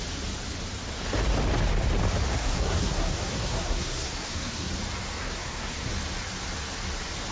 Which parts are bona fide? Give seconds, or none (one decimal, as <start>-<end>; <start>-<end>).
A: 0.0-2.3; 4.7-5.2; 5.9-7.3